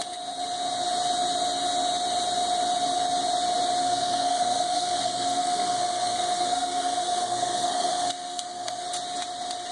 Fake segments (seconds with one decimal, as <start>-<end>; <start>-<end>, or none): 3.8-8.8